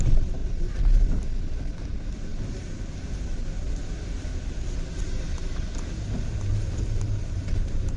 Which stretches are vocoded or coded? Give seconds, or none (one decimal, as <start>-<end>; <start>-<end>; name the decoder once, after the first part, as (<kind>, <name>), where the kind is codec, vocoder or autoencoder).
6.5-8.0 (vocoder, BigVGAN v2)

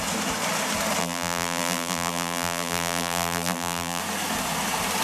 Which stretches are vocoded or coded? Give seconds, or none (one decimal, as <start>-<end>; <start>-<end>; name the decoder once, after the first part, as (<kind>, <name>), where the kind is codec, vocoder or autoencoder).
1.0-4.0 (vocoder, BigVGAN v2)

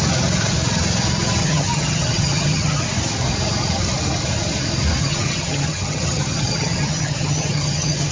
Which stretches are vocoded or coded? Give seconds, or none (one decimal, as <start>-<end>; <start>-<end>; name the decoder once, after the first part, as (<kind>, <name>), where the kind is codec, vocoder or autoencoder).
1.4-2.8 (vocoder, HiFi-GAN); 5.0-8.1

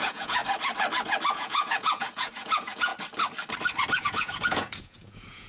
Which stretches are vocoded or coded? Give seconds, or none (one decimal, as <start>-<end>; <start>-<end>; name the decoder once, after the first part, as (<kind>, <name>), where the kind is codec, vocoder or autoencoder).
0.0-0.4 (vocoder, Vocos); 1.3-2.9; 4.0-5.5

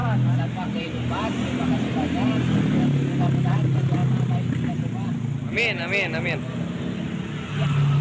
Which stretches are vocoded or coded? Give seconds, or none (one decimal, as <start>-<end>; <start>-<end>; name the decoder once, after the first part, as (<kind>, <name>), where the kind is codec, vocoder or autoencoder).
none

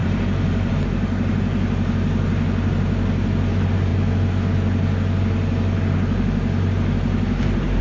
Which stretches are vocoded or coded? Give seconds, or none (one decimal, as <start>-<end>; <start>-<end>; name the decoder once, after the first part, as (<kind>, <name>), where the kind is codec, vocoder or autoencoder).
0.0-0.7 (vocoder, BigVGAN v2)

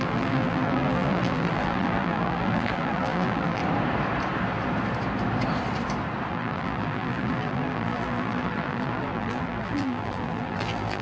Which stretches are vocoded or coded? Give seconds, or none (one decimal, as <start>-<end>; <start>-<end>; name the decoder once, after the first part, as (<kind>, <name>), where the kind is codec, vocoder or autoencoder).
0.0-3.6 (vocoder, BigVGAN v2); 6.3-11.0